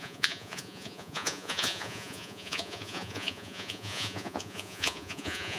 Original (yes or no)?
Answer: no